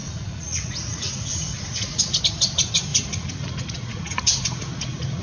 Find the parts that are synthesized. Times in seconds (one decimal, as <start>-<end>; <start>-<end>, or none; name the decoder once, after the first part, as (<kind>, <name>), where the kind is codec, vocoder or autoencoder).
0.0-2.2 (vocoder, Vocos); 2.9-5.2